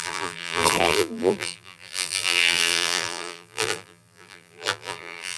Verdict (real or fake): fake